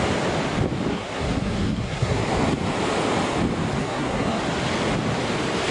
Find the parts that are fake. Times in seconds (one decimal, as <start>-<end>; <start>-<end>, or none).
0.9-2.2; 3.8-4.4